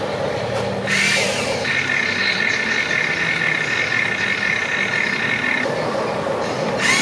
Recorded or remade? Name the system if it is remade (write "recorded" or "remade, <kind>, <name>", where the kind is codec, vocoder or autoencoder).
recorded